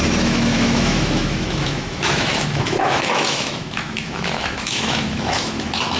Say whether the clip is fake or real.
fake